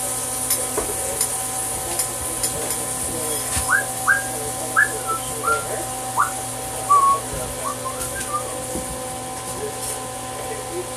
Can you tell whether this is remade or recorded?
recorded